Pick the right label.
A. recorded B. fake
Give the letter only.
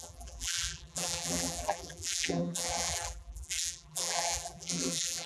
B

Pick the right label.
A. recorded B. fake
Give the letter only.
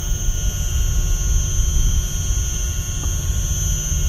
A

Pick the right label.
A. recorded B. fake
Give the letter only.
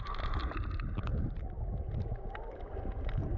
A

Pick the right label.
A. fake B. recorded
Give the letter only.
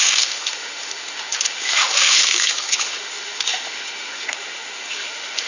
A